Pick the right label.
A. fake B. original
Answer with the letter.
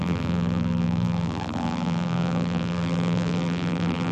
A